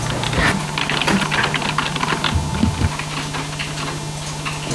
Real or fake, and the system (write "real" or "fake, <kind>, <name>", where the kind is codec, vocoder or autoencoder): real